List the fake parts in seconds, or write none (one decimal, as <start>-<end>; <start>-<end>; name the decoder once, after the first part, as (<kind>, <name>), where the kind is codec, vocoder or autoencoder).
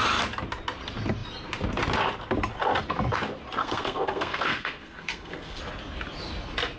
3.6-5.6 (codec, SNAC)